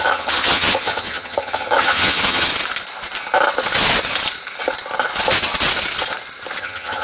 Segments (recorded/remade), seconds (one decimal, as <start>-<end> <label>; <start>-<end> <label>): 0.0-2.5 remade; 2.5-6.6 recorded; 6.6-7.0 remade